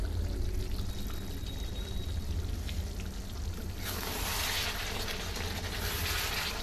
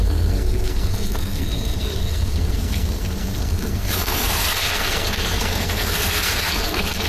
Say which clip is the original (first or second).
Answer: first